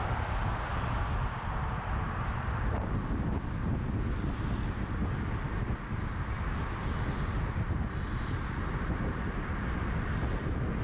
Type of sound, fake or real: real